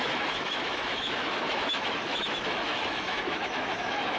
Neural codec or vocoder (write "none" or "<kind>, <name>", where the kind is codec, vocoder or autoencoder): autoencoder, DAC-VAE